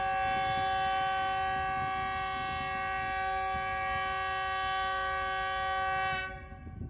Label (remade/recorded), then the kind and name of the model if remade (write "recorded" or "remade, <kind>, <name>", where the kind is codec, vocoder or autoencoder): recorded